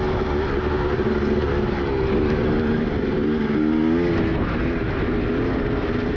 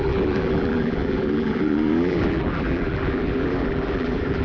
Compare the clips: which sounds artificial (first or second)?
second